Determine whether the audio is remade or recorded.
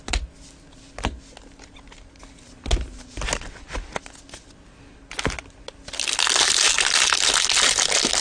recorded